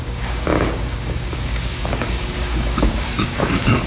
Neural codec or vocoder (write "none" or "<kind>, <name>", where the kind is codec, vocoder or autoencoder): codec, DAC